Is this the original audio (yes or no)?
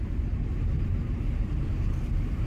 yes